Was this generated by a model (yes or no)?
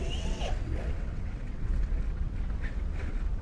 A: yes